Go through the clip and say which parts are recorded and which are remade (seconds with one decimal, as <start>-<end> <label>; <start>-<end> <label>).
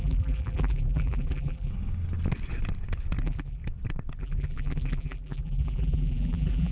0.0-1.7 remade; 1.7-3.2 recorded; 3.2-3.6 remade; 3.6-4.2 recorded; 4.2-6.7 remade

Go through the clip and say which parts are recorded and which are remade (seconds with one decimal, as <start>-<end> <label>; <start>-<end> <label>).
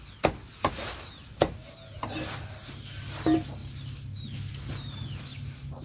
0.0-3.6 recorded; 3.6-5.2 remade; 5.2-5.8 recorded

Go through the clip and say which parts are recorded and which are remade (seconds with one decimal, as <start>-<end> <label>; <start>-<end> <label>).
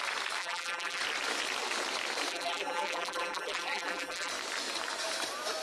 0.0-0.4 recorded; 0.4-1.0 remade; 1.0-2.3 recorded; 2.3-4.3 remade; 4.3-5.6 recorded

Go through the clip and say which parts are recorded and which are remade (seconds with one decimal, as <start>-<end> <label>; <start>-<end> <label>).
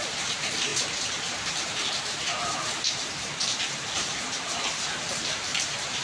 0.0-6.0 remade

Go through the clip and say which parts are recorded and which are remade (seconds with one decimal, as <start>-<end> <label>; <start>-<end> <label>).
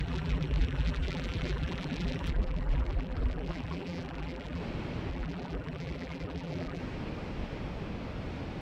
0.0-4.6 remade; 4.6-5.1 recorded; 5.1-6.8 remade; 6.8-8.6 recorded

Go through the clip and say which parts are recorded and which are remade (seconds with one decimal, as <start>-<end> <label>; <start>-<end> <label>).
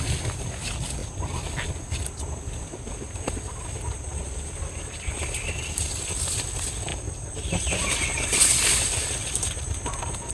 0.0-1.0 recorded; 1.0-4.8 remade; 4.8-6.9 recorded; 6.9-7.6 remade; 7.6-10.3 recorded